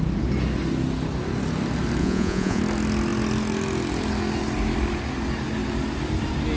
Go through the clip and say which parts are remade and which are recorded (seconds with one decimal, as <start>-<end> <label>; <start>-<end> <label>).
0.0-2.0 recorded; 2.0-2.6 remade; 2.6-6.6 recorded